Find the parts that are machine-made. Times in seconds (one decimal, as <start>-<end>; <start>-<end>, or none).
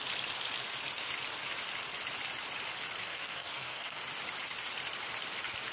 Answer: 3.0-4.0